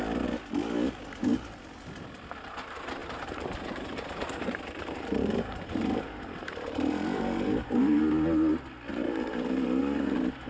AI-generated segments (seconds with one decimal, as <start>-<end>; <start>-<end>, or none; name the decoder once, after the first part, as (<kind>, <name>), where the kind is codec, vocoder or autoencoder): 3.0-8.0 (vocoder, BigVGAN v2); 8.9-9.8

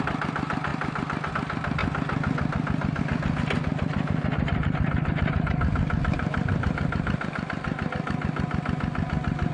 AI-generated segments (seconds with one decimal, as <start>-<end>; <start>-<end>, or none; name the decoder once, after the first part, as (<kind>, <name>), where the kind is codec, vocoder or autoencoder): 3.7-7.9 (vocoder, BigVGAN v2)

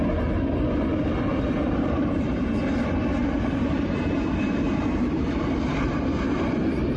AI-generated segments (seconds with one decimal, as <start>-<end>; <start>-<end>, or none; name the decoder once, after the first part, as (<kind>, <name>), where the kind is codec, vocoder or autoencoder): 1.3-2.4 (vocoder, BigVGAN v2); 3.2-6.4

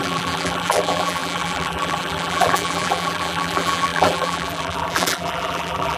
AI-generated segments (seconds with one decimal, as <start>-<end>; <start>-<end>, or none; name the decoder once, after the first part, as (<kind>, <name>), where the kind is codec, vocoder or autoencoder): 0.0-6.0 (vocoder, BigVGAN v2)

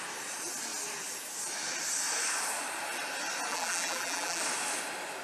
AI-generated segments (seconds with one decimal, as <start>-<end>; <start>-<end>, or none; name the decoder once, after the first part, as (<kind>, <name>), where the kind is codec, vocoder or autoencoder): 3.5-4.4 (vocoder, BigVGAN v2)

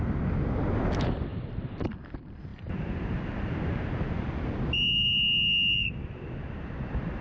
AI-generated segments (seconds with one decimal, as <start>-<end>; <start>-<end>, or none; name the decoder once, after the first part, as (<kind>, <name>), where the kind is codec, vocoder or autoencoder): 1.3-2.0 (vocoder, BigVGAN v2); 2.5-3.9

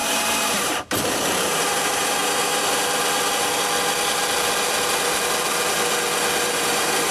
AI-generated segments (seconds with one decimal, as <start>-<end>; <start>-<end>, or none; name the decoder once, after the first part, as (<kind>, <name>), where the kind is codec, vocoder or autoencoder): 0.0-2.2 (vocoder, BigVGAN v2); 6.4-7.1

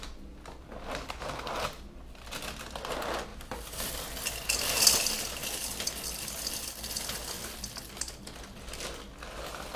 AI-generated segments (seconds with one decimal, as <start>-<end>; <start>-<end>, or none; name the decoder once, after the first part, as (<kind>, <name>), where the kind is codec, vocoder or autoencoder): 3.3-3.9 (vocoder, BigVGAN v2)